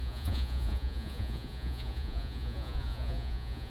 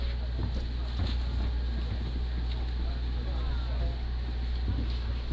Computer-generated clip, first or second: first